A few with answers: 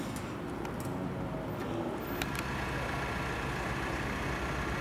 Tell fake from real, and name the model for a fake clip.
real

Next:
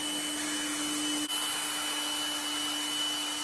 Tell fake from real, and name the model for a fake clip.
real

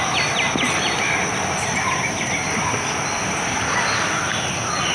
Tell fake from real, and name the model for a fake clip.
real